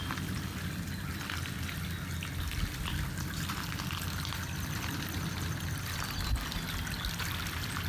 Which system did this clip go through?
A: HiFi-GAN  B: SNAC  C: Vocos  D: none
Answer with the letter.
D